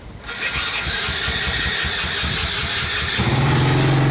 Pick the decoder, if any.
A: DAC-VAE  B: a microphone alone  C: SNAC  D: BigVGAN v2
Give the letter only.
B